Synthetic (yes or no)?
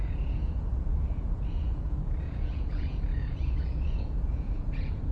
yes